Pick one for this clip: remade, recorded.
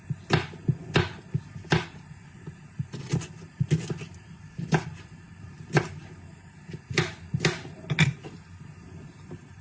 recorded